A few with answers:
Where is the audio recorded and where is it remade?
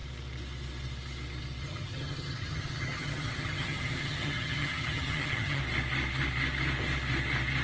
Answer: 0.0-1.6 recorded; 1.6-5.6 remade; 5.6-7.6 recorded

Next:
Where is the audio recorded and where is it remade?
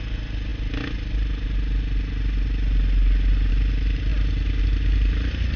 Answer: 0.0-5.6 recorded